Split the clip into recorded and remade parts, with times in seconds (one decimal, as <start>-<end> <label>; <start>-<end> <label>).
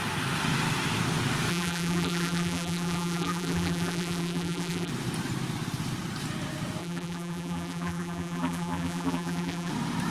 0.0-1.5 recorded; 1.5-4.9 remade; 4.9-6.8 recorded; 6.8-9.7 remade; 9.7-10.1 recorded